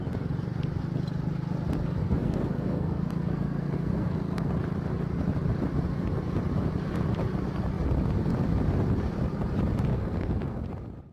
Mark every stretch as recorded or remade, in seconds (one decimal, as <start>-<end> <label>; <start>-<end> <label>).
0.0-2.0 recorded; 2.0-4.5 remade; 4.5-9.9 recorded; 9.9-10.6 remade; 10.6-11.1 recorded